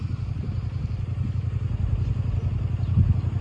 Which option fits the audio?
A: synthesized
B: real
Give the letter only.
B